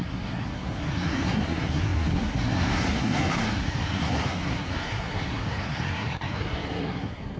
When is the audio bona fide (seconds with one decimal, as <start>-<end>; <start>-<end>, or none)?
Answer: none